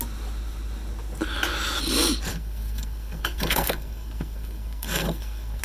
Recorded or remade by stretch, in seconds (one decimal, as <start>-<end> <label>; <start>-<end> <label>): 0.0-2.3 recorded; 2.3-5.6 remade